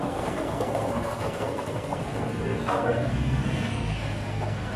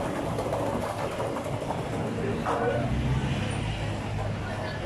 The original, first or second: second